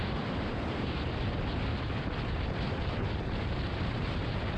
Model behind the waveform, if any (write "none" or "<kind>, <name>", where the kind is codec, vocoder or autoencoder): vocoder, BigVGAN v2